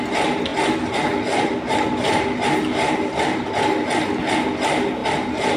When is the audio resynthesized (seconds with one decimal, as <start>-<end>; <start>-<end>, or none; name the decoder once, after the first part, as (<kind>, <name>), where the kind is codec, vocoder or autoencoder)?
none